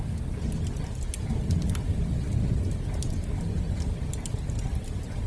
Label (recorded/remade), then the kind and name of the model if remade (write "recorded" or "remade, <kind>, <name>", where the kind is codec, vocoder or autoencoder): recorded